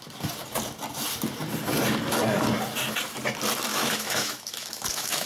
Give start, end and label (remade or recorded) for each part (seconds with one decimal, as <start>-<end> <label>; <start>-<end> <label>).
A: 0.0-3.7 recorded; 3.7-5.3 remade